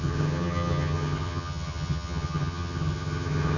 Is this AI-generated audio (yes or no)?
yes